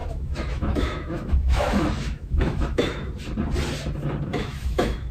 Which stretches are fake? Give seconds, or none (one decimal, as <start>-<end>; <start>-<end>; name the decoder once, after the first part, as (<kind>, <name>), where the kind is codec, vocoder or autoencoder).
0.0-3.1 (autoencoder, DAC-VAE); 4.3-5.1